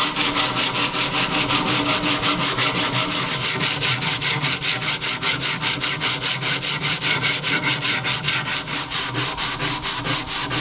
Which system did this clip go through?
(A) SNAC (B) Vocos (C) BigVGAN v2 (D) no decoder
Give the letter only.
D